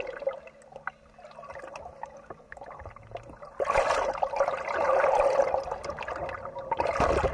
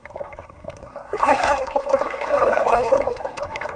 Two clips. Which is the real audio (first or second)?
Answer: first